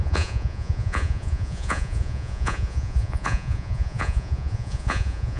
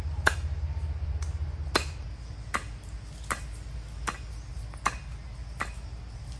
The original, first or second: second